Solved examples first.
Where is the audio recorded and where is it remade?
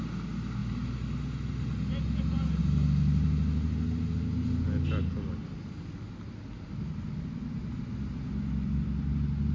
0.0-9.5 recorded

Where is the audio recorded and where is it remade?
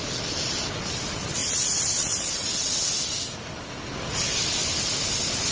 0.0-5.5 recorded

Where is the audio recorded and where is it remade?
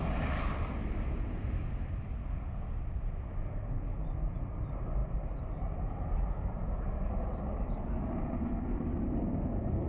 0.0-9.9 recorded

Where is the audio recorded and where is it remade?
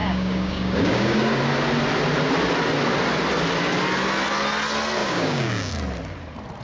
0.0-1.4 remade; 1.4-5.0 recorded; 5.0-5.7 remade; 5.7-6.6 recorded